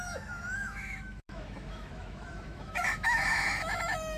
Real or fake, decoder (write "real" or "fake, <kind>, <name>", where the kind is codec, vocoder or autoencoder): fake, autoencoder, DAC-VAE